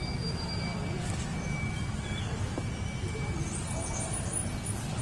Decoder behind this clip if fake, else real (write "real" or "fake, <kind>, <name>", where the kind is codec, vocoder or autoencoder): real